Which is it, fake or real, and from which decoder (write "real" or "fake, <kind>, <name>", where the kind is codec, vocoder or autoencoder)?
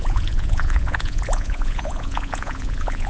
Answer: fake, vocoder, Vocos